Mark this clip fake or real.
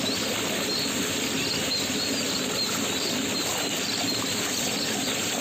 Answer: real